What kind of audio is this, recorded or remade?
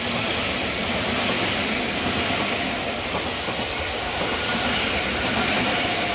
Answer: recorded